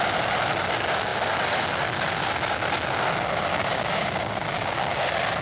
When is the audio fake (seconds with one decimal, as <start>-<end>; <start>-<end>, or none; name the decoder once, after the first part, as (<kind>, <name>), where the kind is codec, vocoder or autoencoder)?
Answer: 3.5-5.0 (codec, DAC)

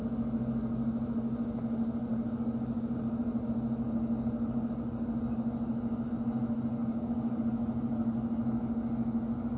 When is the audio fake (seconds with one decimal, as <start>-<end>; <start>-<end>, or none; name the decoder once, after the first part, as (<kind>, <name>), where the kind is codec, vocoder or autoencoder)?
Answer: 6.8-7.4 (codec, DAC)

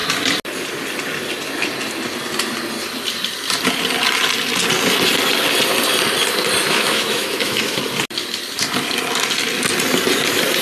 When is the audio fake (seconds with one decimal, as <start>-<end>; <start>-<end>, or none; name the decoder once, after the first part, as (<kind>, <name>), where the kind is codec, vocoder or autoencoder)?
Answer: 6.6-7.8 (autoencoder, DAC-VAE)

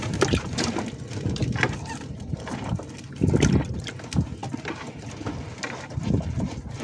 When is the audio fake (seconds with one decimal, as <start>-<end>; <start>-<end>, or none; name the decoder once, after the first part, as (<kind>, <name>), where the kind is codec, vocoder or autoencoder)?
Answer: none

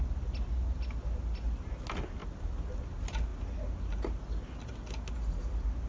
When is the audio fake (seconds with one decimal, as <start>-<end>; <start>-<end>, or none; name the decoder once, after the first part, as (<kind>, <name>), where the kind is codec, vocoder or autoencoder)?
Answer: none

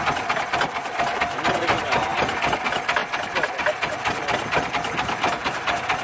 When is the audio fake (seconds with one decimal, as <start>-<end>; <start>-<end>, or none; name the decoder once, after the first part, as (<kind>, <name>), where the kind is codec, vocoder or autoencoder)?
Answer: 2.1-2.6 (vocoder, BigVGAN v2)